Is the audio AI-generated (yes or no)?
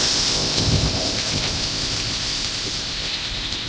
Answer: yes